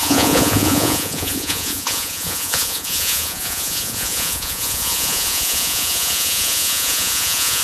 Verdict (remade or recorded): remade